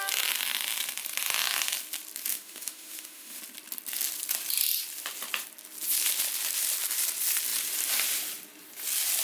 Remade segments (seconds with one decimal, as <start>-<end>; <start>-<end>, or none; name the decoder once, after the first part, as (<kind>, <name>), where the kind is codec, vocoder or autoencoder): 2.3-3.4 (autoencoder, DAC-VAE)